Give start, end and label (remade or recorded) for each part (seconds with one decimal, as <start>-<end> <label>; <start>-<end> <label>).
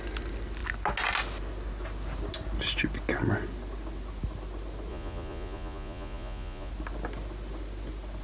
0.0-4.9 recorded; 4.9-6.7 remade; 6.7-8.2 recorded